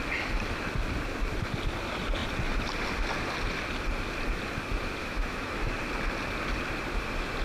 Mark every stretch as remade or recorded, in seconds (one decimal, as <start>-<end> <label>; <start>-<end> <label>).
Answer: 0.0-5.0 recorded; 5.0-5.7 remade; 5.7-7.4 recorded